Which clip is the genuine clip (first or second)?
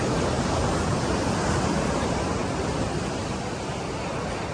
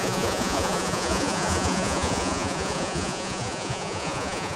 first